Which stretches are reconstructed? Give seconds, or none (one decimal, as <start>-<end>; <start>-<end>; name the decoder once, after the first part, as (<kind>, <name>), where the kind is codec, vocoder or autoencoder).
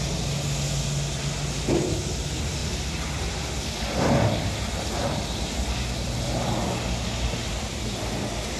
none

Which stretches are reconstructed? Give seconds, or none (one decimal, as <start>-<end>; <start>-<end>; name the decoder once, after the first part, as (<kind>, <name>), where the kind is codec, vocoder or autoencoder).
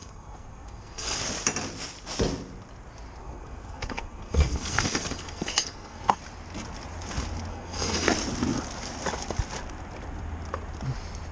0.0-1.2 (codec, SNAC); 3.2-6.2; 7.5-8.1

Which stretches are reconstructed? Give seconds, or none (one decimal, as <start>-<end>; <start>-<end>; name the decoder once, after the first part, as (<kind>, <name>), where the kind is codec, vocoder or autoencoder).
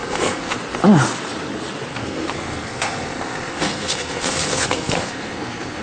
0.0-0.6 (codec, SNAC); 1.9-5.8